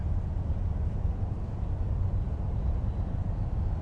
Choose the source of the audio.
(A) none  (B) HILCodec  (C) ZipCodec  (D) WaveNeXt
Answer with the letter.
A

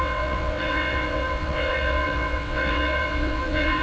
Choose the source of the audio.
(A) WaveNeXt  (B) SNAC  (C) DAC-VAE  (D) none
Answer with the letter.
A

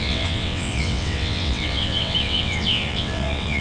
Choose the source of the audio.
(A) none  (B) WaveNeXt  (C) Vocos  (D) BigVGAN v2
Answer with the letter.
B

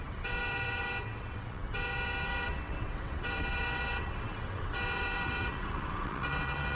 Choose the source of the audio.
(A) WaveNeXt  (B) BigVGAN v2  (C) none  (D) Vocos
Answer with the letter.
A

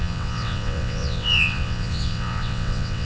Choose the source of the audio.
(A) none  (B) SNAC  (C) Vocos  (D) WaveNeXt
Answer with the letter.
D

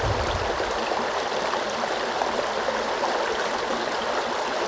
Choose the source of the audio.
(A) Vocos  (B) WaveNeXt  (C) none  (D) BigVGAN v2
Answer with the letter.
C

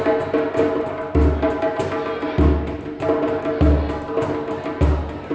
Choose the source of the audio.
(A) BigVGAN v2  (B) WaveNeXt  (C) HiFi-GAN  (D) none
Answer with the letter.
D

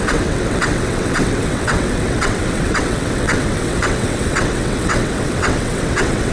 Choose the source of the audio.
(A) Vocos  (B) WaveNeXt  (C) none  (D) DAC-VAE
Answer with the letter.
B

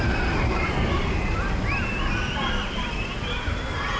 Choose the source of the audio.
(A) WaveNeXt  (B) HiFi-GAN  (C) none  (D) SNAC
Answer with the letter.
C